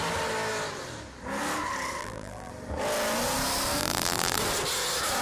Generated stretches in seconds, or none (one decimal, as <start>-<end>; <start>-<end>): 2.0-2.5; 3.8-4.4